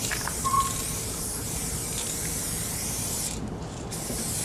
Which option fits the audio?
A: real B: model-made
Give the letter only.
B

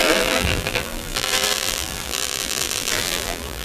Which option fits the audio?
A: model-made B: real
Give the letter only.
A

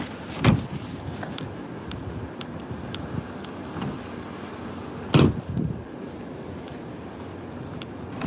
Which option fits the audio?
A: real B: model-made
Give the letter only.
A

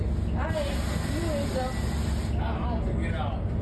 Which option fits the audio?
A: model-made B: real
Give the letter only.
B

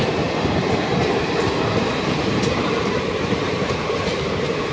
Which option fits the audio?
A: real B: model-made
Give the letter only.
B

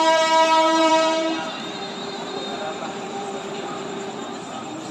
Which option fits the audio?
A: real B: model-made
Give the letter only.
B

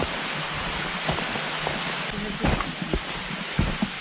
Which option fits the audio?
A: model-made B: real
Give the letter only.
B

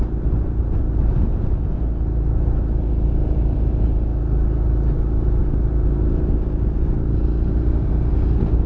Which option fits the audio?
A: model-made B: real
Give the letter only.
B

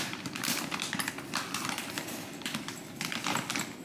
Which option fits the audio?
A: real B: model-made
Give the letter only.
B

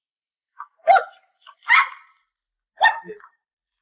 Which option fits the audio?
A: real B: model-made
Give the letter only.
A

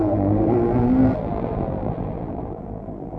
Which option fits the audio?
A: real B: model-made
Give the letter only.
B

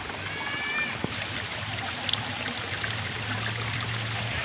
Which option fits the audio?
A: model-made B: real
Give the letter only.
A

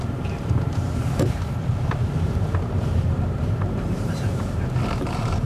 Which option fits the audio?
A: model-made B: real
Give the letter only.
A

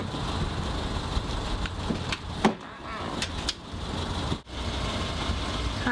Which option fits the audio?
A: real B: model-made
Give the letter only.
A